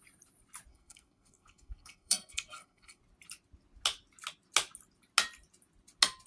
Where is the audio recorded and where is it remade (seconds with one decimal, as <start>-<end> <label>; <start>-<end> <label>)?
0.0-0.7 recorded; 0.7-3.0 remade; 3.0-6.3 recorded